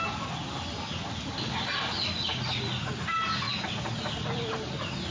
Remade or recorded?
recorded